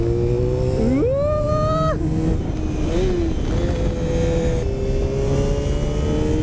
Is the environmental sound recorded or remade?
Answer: recorded